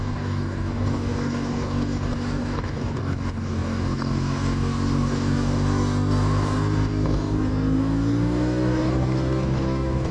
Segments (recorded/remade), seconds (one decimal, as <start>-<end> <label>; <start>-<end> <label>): 0.0-10.1 remade